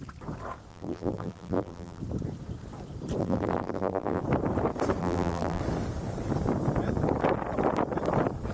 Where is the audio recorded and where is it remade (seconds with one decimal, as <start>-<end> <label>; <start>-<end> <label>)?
0.0-0.7 recorded; 0.7-2.0 remade; 2.0-3.2 recorded; 3.2-4.2 remade; 4.2-5.0 recorded; 5.0-5.6 remade; 5.6-8.5 recorded